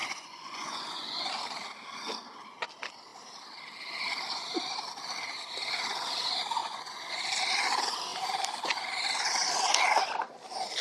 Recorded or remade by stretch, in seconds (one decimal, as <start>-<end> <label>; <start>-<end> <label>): 0.0-1.3 remade; 1.3-6.6 recorded; 6.6-7.1 remade; 7.1-10.8 recorded